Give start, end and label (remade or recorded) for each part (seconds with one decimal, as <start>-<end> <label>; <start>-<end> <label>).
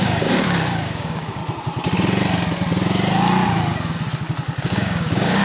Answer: 0.0-1.4 remade; 1.4-4.6 recorded; 4.6-5.4 remade